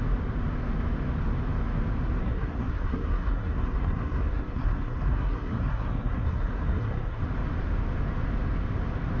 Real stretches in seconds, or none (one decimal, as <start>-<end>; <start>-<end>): 0.0-2.2; 7.2-9.2